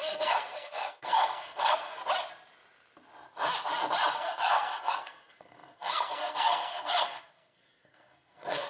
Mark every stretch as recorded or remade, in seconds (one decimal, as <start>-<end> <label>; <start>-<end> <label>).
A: 0.0-2.0 remade; 2.0-4.1 recorded; 4.1-8.7 remade